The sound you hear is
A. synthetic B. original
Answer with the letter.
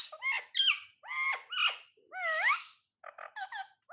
B